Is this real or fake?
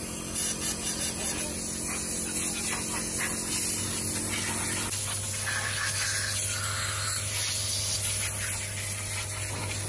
real